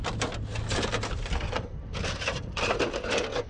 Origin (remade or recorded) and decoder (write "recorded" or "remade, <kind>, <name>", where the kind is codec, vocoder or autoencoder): recorded